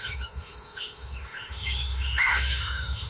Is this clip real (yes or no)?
no